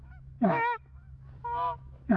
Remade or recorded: remade